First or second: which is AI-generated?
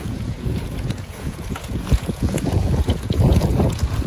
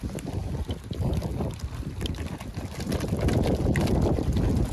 first